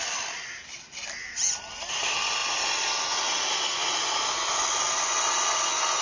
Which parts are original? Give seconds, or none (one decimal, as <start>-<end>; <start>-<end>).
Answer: 0.0-6.0